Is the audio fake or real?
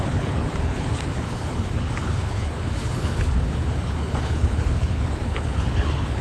fake